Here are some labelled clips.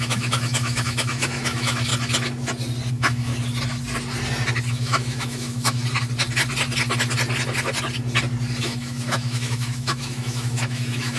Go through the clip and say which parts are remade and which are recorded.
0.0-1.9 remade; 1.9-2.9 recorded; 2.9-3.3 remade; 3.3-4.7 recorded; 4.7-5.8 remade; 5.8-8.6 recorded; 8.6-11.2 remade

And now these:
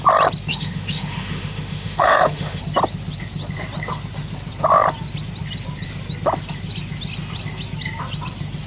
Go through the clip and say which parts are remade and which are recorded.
0.0-0.5 recorded; 0.5-2.6 remade; 2.6-8.7 recorded

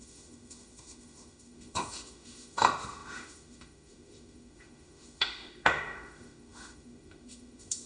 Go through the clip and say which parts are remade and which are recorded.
0.0-7.9 remade

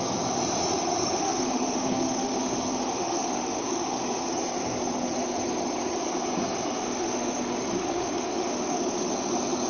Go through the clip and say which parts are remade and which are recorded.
0.0-1.2 recorded; 1.2-4.0 remade; 4.0-6.9 recorded; 6.9-9.1 remade; 9.1-9.7 recorded

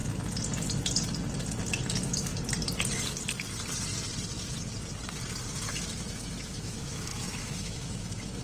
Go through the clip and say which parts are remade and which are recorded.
0.0-1.9 recorded; 1.9-2.3 remade; 2.3-5.8 recorded; 5.8-8.4 remade

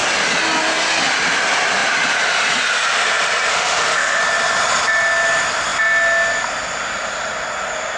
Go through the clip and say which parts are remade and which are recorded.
0.0-3.5 recorded; 3.5-4.2 remade; 4.2-8.0 recorded

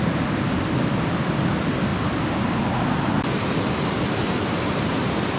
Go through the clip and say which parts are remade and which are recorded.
0.0-5.4 recorded